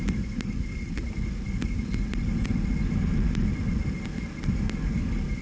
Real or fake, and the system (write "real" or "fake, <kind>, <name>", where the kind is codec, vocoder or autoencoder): real